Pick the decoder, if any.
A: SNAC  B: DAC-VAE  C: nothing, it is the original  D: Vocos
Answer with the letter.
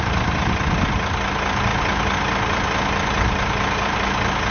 C